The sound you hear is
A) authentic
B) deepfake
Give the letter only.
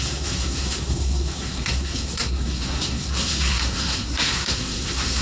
B